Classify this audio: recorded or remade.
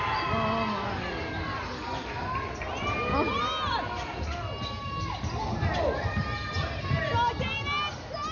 recorded